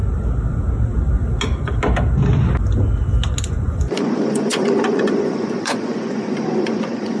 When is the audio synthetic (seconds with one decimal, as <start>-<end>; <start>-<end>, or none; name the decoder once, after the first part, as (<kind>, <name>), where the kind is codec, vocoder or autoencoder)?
3.5-7.2 (vocoder, Vocos)